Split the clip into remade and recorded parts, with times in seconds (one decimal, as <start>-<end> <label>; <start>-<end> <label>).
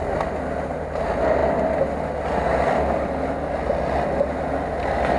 0.0-5.2 recorded